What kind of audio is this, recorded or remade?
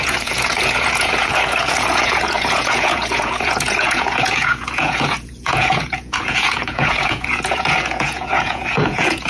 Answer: remade